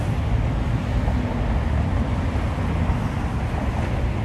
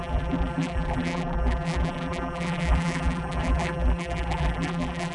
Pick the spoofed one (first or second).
second